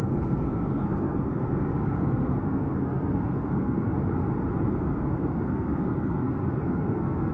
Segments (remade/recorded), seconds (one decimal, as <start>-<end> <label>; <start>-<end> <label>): 0.0-3.9 remade; 3.9-4.7 recorded; 4.7-7.3 remade